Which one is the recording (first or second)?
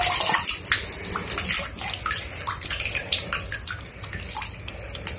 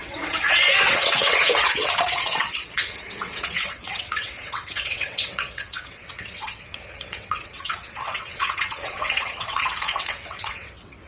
first